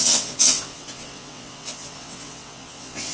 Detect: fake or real fake